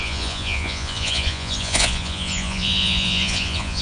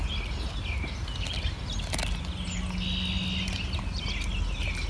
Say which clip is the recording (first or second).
second